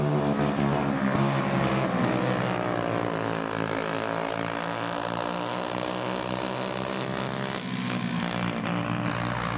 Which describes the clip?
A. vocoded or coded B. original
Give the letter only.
B